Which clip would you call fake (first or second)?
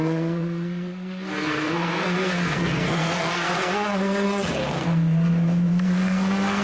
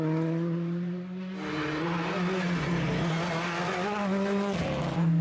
first